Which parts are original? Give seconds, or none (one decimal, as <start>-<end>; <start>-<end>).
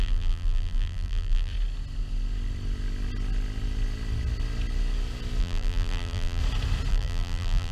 1.5-5.4; 6.4-6.9